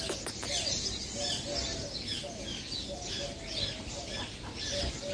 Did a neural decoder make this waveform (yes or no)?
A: no